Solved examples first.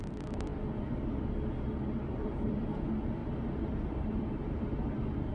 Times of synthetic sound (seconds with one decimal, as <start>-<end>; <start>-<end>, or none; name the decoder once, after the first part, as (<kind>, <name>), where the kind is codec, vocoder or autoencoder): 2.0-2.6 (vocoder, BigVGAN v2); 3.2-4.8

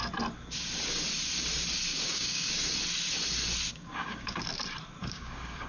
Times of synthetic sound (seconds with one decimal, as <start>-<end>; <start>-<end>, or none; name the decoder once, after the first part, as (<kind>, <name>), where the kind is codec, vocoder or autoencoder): 1.9-2.5 (codec, DAC); 3.7-4.4; 5.0-5.7

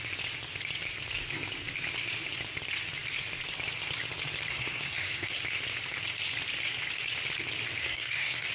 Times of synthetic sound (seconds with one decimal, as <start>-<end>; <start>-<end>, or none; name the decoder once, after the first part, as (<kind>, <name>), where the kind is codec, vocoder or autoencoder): 4.5-5.4 (codec, SNAC); 7.8-8.5

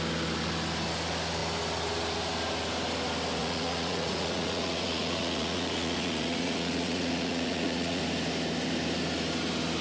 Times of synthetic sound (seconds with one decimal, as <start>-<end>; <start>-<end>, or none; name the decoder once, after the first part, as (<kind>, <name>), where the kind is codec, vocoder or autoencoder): 3.4-8.0 (vocoder, Vocos)